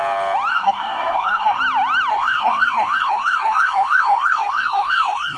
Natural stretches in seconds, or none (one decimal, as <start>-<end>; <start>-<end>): 0.0-0.5; 1.6-2.1